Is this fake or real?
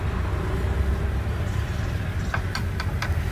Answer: real